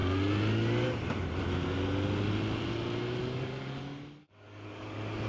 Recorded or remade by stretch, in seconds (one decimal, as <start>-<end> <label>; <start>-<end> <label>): 0.0-3.2 recorded; 3.2-3.8 remade; 3.8-4.2 recorded; 4.2-5.3 remade

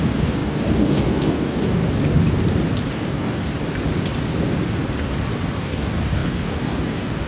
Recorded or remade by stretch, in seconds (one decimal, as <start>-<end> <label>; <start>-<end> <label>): 0.0-1.8 remade; 1.8-2.9 recorded; 2.9-3.4 remade; 3.4-5.6 recorded; 5.6-7.3 remade